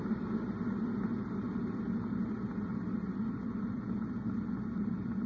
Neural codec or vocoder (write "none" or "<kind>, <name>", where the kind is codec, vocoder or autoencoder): none